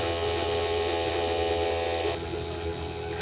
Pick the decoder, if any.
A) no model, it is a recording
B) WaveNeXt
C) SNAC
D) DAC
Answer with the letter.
A